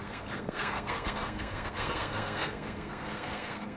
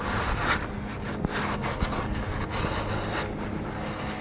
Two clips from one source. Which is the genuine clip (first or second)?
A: second